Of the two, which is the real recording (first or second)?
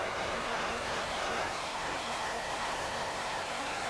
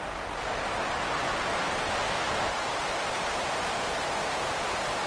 second